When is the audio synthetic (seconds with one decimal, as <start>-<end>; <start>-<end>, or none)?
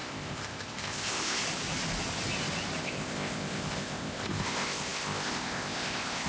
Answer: 0.0-1.4; 2.8-6.3